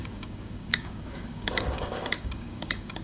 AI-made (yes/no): yes